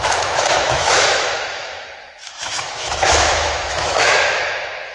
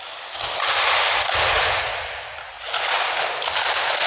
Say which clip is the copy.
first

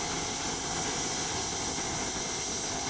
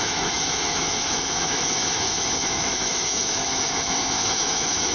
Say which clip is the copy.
second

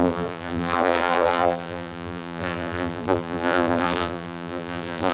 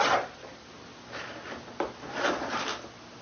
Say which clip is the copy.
first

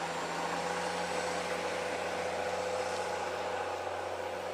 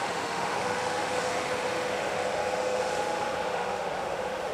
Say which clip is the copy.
second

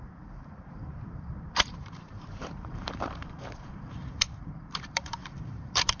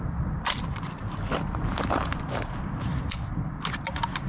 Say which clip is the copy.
first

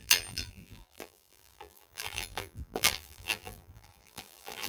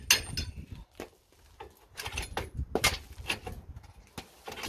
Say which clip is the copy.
first